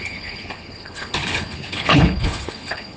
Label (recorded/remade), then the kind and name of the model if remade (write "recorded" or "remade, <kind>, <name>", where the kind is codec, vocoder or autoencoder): remade, codec, HILCodec